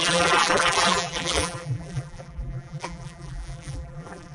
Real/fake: fake